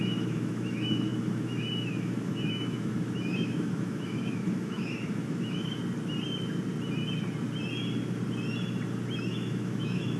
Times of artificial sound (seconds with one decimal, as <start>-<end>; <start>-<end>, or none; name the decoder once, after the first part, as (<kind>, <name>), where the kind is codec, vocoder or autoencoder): 0.0-5.8 (autoencoder, DAC-VAE); 9.3-10.2